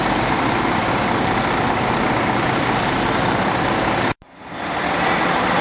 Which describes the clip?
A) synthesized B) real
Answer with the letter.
A